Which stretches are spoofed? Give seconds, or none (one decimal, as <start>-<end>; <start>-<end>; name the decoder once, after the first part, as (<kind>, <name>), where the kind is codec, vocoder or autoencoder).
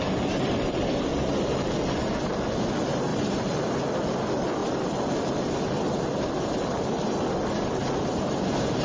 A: 3.1-3.8 (vocoder, BigVGAN v2)